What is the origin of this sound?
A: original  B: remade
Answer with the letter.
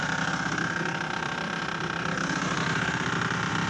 A